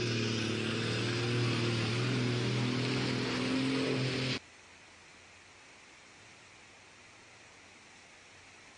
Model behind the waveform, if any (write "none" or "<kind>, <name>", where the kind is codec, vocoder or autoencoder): none